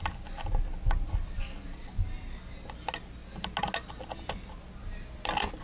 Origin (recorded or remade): recorded